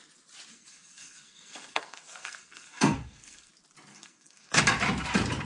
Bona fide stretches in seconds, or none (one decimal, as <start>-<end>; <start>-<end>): 0.0-0.5; 3.5-3.9; 4.6-5.5